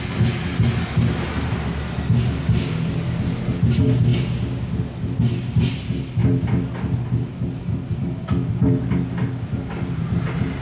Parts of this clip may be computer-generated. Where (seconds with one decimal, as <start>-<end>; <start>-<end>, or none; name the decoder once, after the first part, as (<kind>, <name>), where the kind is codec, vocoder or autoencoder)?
none